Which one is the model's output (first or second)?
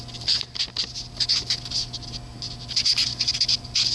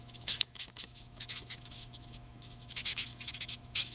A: second